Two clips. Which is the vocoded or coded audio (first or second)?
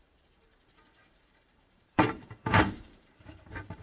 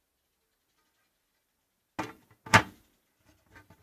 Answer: first